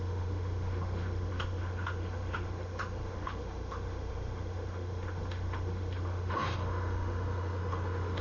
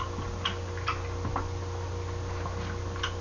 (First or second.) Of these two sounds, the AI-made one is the first